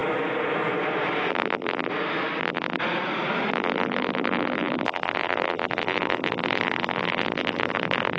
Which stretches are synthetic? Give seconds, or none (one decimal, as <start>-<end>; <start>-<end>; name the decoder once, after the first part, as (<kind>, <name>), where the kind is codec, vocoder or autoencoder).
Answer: 1.3-1.9 (vocoder, BigVGAN v2); 2.4-2.8; 3.5-8.2